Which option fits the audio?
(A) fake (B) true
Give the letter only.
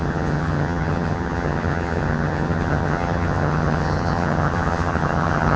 A